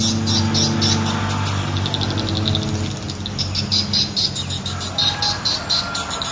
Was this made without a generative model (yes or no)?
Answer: yes